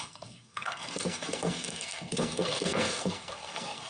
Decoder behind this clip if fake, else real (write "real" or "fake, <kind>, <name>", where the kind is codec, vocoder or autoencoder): fake, codec, SNAC